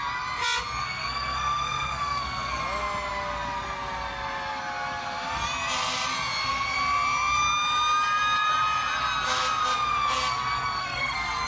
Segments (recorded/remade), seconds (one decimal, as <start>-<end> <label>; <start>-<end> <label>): 0.0-0.8 recorded; 0.8-2.6 remade; 2.6-10.8 recorded; 10.8-11.5 remade